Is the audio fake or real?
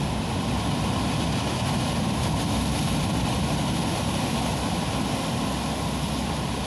real